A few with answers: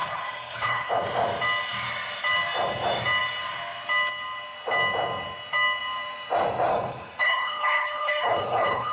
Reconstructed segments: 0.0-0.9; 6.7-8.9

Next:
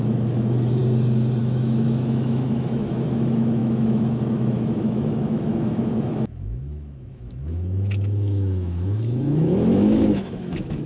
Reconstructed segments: 0.0-0.8; 1.4-10.9

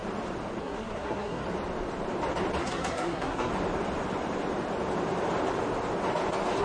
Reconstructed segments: 0.6-1.4; 2.6-3.5

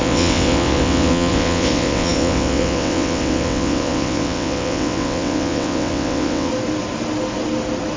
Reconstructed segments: 0.0-6.5

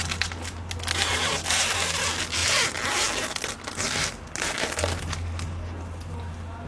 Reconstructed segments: none

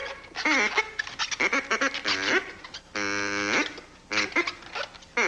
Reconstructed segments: none